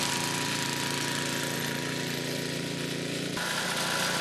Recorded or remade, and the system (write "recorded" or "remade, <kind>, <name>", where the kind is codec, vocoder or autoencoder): recorded